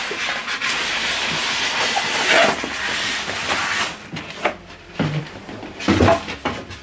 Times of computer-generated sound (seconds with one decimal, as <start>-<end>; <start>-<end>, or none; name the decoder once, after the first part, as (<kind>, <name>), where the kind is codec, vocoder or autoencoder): none